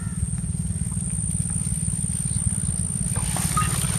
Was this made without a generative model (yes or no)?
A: yes